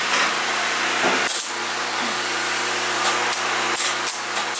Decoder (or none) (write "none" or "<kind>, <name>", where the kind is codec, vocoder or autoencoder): none